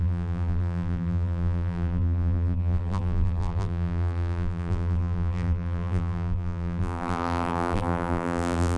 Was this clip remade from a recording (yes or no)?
yes